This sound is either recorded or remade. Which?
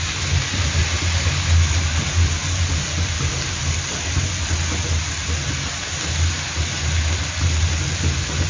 recorded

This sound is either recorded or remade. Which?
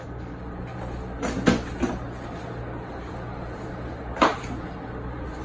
recorded